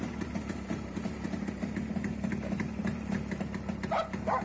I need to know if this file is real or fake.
real